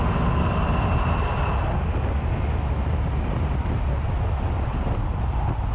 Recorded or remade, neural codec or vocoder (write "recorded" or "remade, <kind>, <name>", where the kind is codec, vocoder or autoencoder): recorded